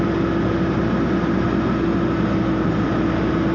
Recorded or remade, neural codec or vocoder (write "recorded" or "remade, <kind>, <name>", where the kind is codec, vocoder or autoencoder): recorded